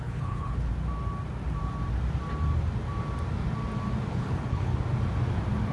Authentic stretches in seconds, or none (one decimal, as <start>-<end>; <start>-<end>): 0.7-4.1; 4.7-5.7